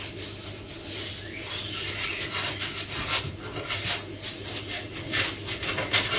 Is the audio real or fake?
real